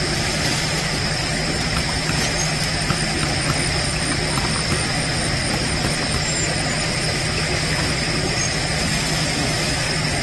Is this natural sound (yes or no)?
yes